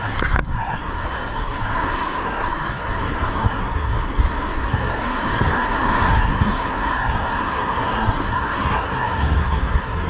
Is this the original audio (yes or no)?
no